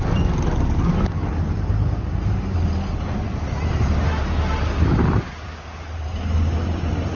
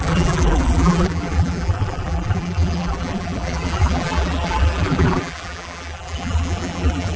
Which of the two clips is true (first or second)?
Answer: first